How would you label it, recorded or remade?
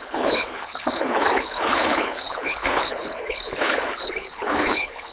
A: remade